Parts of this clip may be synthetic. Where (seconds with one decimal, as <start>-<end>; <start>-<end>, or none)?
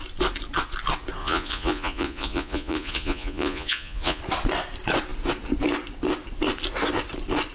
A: 1.2-4.2